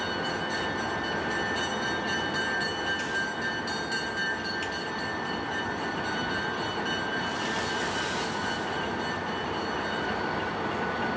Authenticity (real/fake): real